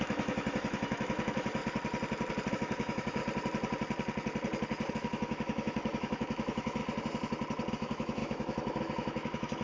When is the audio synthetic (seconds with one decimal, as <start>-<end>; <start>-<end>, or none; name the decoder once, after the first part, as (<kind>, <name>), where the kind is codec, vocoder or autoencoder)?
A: 0.0-1.6 (autoencoder, DAC-VAE); 2.5-3.2; 4.9-6.8; 7.7-9.6